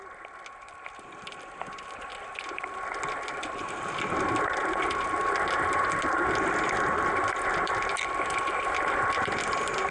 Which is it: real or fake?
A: real